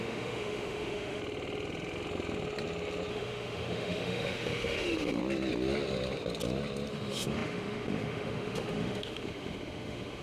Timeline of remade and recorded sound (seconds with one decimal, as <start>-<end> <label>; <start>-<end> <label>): 0.0-1.2 remade; 1.2-3.1 recorded; 3.1-5.2 remade; 5.2-6.9 recorded; 6.9-10.2 remade